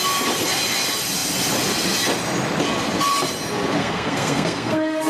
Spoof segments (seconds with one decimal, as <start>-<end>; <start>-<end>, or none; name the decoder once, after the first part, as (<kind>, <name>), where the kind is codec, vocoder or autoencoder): 3.8-5.1 (codec, SNAC)